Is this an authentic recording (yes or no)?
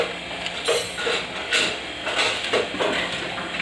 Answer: yes